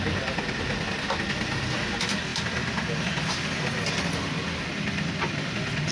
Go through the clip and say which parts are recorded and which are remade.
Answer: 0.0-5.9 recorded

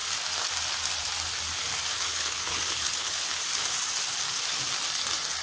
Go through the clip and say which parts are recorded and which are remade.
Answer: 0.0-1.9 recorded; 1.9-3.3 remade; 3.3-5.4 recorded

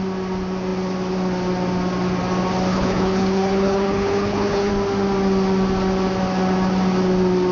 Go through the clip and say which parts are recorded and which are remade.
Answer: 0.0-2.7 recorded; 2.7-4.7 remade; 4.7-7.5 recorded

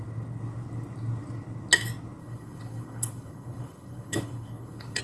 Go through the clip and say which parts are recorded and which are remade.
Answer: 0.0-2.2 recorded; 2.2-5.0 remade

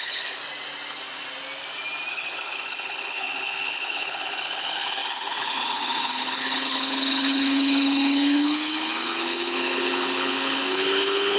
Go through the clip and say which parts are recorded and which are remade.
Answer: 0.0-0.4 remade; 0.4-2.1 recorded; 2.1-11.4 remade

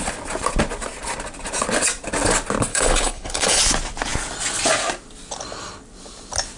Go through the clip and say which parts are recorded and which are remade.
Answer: 0.0-2.7 recorded; 2.7-3.6 remade; 3.6-6.6 recorded

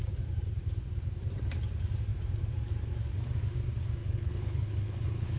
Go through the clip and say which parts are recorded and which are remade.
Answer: 0.0-4.0 recorded; 4.0-5.4 remade